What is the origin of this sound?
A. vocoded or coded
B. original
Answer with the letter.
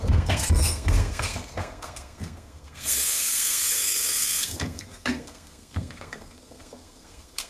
A